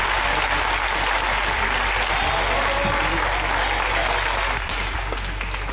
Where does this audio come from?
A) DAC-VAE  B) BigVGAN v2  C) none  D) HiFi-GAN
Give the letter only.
C